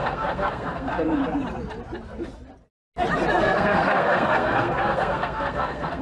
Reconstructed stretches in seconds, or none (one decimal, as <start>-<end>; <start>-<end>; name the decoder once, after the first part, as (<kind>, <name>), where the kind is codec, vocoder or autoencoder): 0.0-1.2 (codec, SNAC); 3.3-6.0